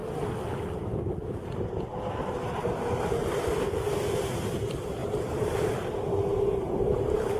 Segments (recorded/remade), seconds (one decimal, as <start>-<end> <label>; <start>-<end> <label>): 0.0-5.0 recorded; 5.0-5.6 remade; 5.6-7.4 recorded